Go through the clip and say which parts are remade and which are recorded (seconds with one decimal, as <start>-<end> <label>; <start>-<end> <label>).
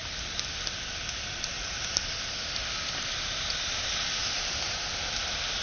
0.0-5.6 recorded